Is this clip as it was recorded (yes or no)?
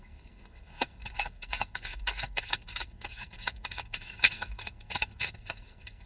no